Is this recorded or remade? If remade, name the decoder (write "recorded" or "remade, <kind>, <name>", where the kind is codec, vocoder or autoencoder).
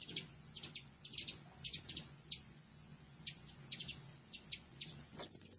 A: remade, vocoder, Vocos